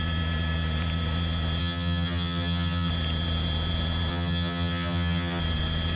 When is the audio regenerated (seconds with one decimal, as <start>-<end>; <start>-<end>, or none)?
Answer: 1.6-2.9; 4.1-5.4